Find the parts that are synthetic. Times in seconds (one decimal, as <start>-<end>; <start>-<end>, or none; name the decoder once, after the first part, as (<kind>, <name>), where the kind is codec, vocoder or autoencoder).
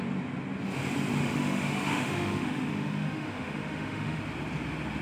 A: 1.2-4.2 (autoencoder, DAC-VAE)